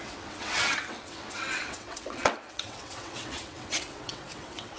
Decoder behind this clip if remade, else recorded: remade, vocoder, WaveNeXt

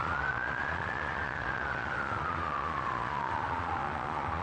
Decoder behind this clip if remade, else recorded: remade, vocoder, Vocos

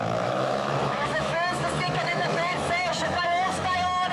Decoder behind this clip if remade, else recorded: remade, autoencoder, DAC-VAE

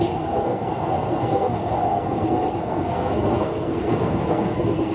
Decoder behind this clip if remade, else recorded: remade, codec, SNAC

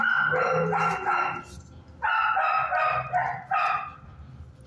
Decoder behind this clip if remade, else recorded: recorded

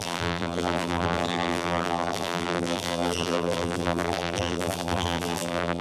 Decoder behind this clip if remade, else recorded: remade, vocoder, BigVGAN v2